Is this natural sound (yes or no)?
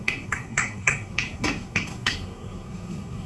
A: no